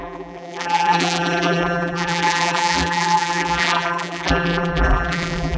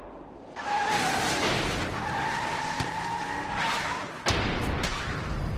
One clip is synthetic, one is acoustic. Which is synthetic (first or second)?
first